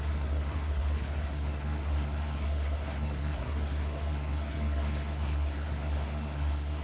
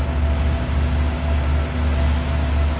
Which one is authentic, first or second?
second